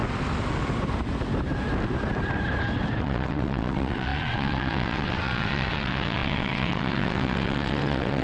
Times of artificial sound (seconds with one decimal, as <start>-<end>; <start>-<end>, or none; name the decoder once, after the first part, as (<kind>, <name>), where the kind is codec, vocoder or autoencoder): 3.0-8.2 (vocoder, WaveNeXt)